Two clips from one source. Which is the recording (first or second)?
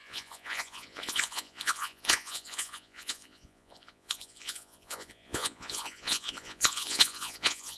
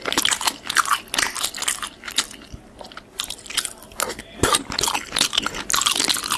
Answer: second